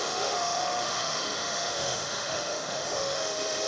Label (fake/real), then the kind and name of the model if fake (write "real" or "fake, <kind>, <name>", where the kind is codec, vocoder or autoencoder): fake, autoencoder, DAC-VAE